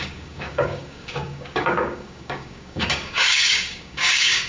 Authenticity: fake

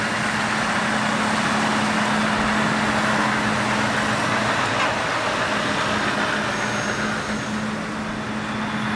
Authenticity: real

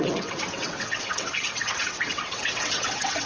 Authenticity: fake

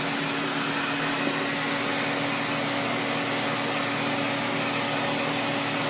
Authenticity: real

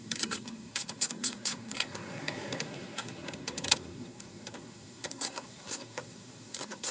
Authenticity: fake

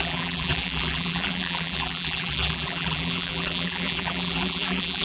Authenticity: fake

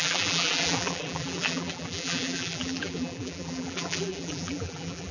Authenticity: fake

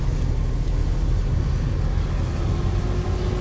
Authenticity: real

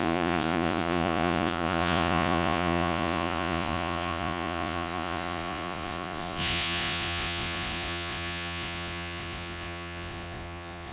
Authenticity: fake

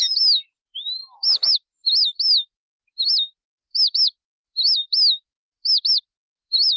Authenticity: fake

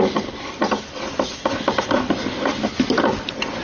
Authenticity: real